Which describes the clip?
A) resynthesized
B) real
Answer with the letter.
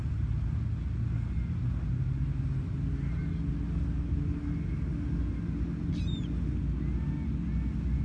B